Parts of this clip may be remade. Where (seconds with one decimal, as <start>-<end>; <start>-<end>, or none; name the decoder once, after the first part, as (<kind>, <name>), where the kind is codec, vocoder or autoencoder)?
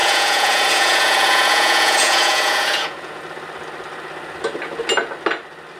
0.0-3.2 (vocoder, Vocos)